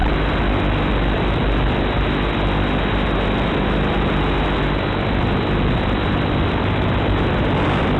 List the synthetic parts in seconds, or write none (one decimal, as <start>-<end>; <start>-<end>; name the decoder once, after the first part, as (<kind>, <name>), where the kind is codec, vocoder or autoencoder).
none